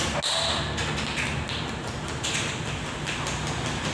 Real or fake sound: real